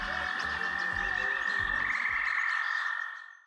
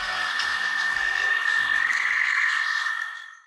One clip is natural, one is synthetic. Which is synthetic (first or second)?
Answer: second